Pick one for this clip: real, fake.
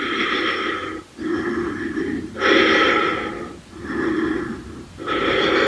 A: real